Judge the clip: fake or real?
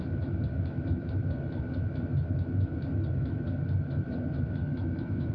fake